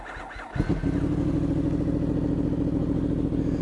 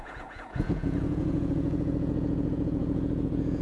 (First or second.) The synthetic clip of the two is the second